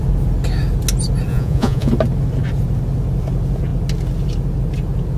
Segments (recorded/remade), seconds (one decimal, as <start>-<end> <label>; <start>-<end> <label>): 0.0-1.3 recorded; 1.3-1.9 remade; 1.9-5.2 recorded